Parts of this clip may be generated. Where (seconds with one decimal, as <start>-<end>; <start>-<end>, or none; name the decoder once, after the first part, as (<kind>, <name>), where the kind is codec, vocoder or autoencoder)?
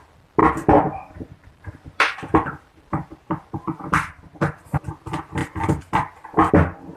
0.4-3.8 (vocoder, BigVGAN v2); 4.3-4.9